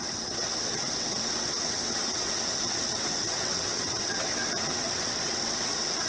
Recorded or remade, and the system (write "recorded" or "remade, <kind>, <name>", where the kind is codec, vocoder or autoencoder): remade, vocoder, WaveNeXt